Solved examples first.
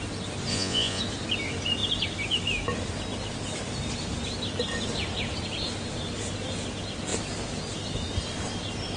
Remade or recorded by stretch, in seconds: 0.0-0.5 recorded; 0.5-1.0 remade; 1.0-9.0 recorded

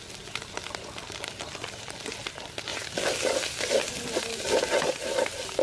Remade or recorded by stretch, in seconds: 0.0-5.6 recorded

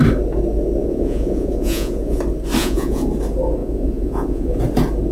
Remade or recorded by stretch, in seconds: 0.0-0.8 recorded; 0.8-2.2 remade; 2.2-2.6 recorded; 2.6-3.1 remade; 3.1-3.6 recorded; 3.6-4.6 remade; 4.6-5.1 recorded

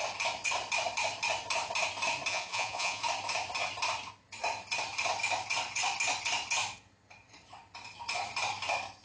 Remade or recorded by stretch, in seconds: 0.0-2.3 recorded; 2.3-3.0 remade; 3.0-9.0 recorded

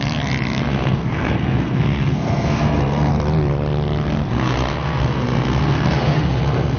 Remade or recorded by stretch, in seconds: 0.0-0.6 recorded; 0.6-3.1 remade; 3.1-4.3 recorded; 4.3-6.8 remade

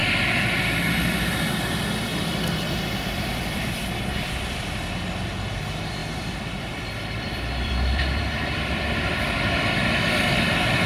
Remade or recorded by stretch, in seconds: 0.0-2.1 recorded; 2.1-4.3 remade; 4.3-6.0 recorded; 6.0-9.1 remade; 9.1-10.9 recorded

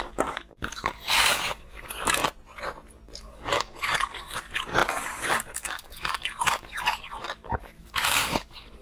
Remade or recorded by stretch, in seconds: 0.0-2.2 remade; 2.2-3.2 recorded; 3.2-8.8 remade

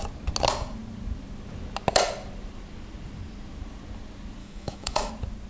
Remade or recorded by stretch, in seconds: 0.0-4.4 recorded; 4.4-5.1 remade; 5.1-5.5 recorded